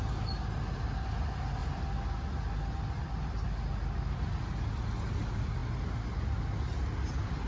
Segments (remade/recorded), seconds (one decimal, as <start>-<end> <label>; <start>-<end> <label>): 0.0-7.5 recorded